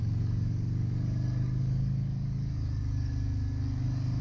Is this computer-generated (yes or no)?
yes